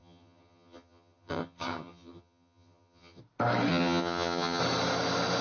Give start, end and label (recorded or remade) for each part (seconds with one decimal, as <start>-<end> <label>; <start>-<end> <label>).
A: 0.0-3.2 remade; 3.2-3.7 recorded; 3.7-4.6 remade; 4.6-5.4 recorded